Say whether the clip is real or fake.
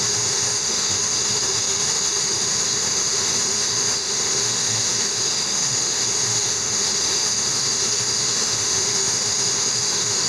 fake